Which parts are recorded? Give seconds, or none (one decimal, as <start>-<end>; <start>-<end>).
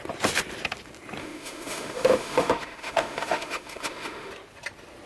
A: 0.0-1.2; 4.3-5.1